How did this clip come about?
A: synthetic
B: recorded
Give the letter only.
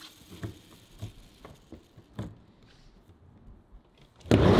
B